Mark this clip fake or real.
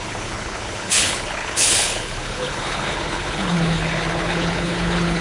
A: fake